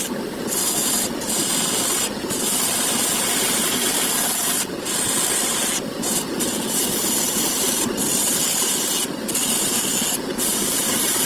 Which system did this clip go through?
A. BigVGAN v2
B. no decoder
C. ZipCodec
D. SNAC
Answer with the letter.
B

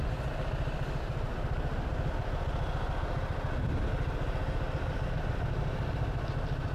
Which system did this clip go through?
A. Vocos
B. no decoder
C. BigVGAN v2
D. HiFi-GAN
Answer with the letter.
B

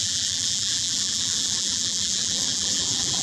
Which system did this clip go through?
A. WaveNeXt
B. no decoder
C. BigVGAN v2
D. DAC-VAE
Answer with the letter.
C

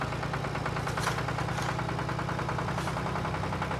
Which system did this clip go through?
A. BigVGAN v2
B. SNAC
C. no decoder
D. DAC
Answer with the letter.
C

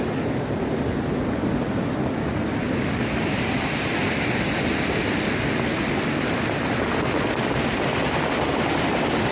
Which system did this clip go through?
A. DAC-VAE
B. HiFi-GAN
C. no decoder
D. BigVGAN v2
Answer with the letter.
C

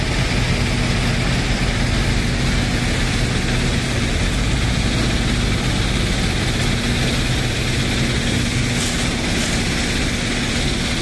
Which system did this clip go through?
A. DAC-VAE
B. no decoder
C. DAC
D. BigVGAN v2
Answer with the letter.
B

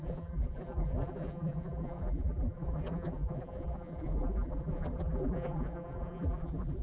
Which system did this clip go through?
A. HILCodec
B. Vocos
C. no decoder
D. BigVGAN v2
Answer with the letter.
D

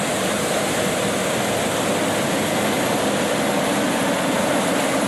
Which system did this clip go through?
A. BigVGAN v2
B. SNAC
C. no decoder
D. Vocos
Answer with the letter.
C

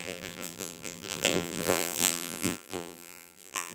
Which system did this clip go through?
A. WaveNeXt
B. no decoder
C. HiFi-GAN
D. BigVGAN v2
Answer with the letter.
D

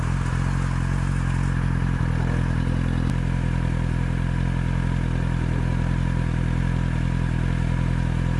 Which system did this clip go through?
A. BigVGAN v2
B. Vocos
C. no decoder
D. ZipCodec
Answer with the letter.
C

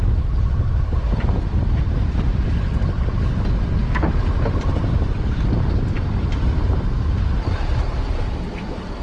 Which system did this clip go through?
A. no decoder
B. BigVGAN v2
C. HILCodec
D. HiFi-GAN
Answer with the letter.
B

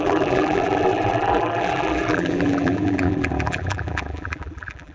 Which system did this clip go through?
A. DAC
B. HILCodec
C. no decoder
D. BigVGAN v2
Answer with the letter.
D